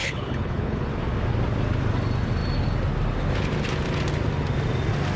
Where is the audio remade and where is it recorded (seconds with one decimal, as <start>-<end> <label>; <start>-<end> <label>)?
0.0-0.9 remade; 0.9-5.2 recorded